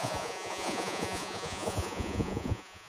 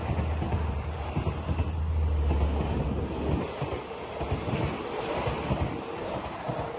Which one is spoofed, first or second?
first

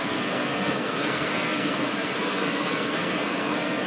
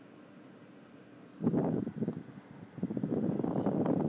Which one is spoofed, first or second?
first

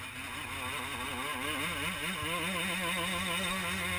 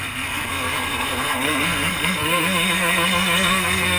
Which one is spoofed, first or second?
second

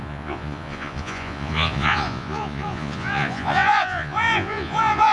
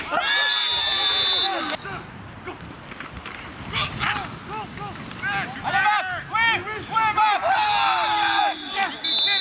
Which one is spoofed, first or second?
first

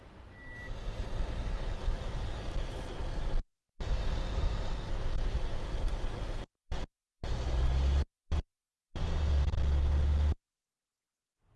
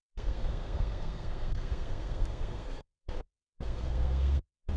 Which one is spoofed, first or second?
second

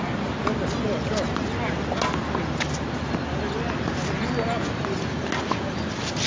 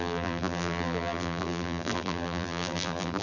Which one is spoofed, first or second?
second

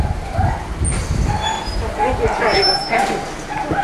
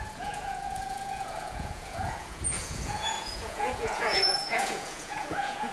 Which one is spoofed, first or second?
second